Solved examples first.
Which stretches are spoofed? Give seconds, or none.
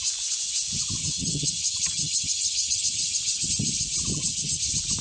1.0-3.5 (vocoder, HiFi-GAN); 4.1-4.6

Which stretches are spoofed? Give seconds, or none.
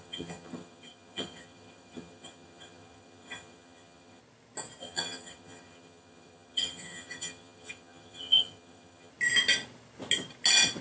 0.0-4.2 (vocoder, HiFi-GAN); 4.8-9.1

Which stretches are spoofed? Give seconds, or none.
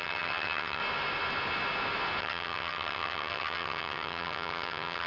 0.0-0.8 (vocoder, HiFi-GAN); 2.2-5.1